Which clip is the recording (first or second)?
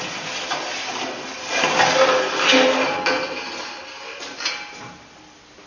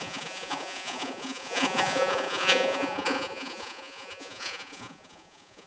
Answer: first